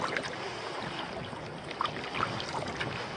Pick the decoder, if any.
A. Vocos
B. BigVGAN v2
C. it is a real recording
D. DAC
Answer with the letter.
C